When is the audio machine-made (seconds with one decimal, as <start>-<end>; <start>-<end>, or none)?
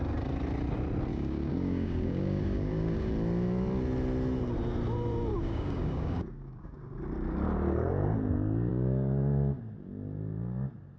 1.1-3.1; 5.3-6.8; 8.7-9.6